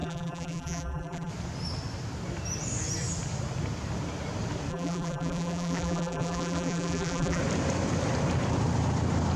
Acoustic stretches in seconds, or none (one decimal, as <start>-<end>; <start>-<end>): 1.3-4.7; 7.4-9.4